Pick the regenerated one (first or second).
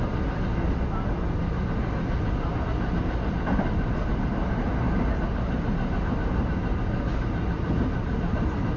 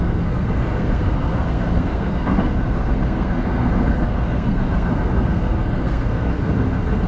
second